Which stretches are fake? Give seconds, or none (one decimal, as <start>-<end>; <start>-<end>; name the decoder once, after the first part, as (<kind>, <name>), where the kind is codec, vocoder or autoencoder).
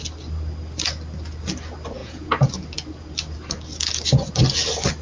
2.0-2.5 (vocoder, Vocos)